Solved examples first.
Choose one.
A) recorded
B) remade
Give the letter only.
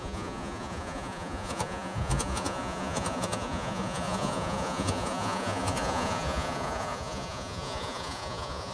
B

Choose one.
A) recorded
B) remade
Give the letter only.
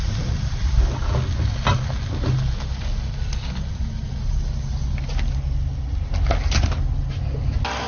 A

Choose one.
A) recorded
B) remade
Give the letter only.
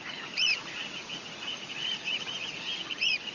B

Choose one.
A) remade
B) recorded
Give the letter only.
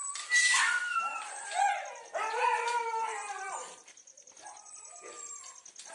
A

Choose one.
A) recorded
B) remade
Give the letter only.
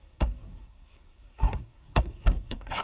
B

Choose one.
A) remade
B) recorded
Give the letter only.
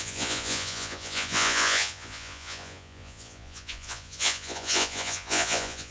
A